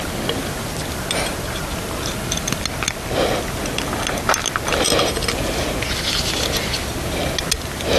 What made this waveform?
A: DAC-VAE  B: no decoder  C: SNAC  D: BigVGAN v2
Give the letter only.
B